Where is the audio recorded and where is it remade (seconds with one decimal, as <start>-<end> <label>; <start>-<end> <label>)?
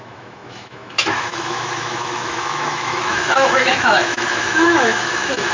0.0-5.5 remade